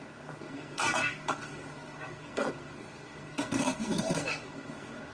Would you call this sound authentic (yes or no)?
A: no